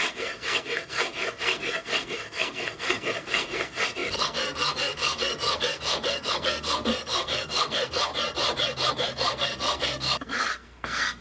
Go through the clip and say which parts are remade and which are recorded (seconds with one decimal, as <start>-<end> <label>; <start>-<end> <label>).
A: 0.0-8.1 remade; 8.1-8.9 recorded; 8.9-11.2 remade